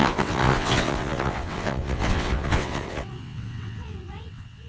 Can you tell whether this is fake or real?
fake